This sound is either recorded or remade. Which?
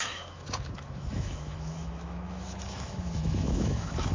remade